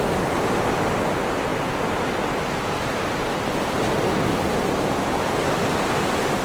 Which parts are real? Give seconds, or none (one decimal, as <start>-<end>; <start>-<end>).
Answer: 0.0-6.4